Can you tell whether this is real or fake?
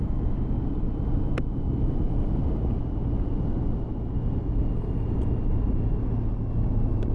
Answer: real